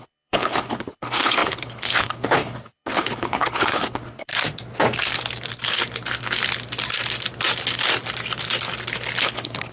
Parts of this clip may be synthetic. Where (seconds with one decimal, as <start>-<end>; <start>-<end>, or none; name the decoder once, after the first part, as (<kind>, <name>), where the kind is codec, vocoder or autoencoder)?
0.0-4.3 (codec, HILCodec); 9.2-9.7